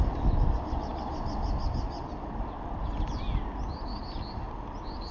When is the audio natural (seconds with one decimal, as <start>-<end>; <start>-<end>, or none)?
0.0-5.1